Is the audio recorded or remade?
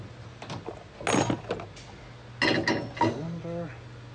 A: recorded